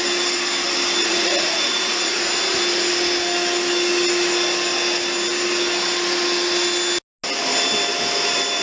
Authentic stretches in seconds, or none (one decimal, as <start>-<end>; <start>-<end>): 0.0-1.0; 2.3-8.6